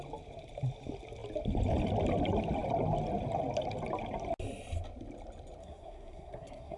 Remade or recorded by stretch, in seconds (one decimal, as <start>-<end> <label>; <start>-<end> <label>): 0.0-5.6 recorded; 5.6-6.8 remade